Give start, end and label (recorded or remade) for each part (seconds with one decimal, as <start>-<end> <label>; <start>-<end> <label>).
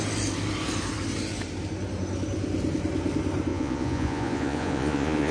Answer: 0.0-3.5 recorded; 3.5-5.3 remade